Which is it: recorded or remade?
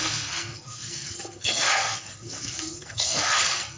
remade